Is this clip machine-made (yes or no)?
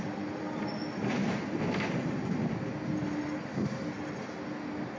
no